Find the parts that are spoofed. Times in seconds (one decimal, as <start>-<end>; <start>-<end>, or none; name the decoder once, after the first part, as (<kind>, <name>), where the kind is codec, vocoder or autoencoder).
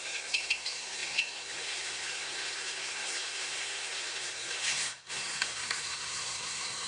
0.0-6.9 (codec, SNAC)